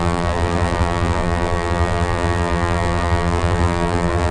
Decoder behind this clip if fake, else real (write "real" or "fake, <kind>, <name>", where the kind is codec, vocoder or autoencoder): fake, vocoder, BigVGAN v2